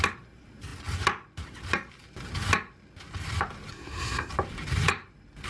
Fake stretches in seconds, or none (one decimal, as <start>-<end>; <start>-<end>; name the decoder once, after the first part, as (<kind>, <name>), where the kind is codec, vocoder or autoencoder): 3.7-4.3 (codec, SNAC)

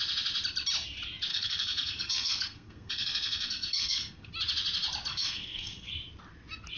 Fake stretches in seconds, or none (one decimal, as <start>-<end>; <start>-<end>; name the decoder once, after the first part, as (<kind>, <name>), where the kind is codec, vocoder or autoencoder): 1.3-4.3 (codec, SNAC); 5.1-5.9

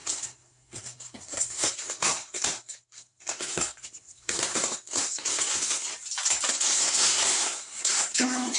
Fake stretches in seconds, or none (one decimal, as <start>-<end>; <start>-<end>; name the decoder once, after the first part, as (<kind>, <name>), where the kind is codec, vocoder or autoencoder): 0.0-5.9 (codec, SNAC); 6.5-8.6

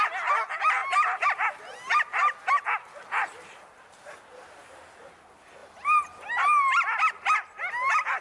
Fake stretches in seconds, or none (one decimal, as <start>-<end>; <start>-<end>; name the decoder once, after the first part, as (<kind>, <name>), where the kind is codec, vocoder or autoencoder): none

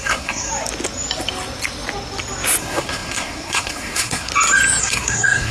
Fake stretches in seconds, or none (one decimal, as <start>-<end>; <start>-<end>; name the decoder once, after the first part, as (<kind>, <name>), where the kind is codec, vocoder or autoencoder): 0.0-0.5 (codec, SNAC); 2.6-4.3; 4.8-5.5